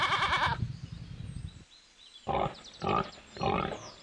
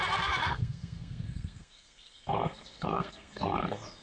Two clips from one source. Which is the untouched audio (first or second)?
first